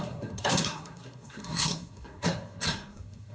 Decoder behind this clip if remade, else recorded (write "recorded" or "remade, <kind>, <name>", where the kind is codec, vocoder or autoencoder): remade, codec, SNAC